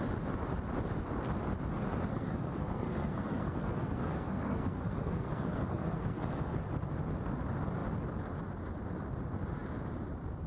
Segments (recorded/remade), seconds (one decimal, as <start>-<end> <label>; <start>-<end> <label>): 0.0-2.1 recorded; 2.1-6.6 remade; 6.6-10.5 recorded